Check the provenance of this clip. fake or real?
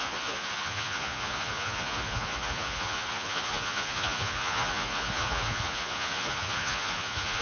fake